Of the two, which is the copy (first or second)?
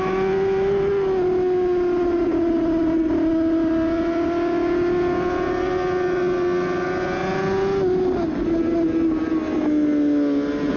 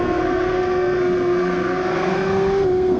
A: second